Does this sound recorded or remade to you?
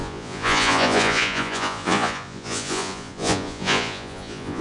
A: remade